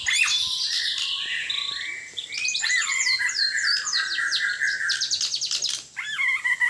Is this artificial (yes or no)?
no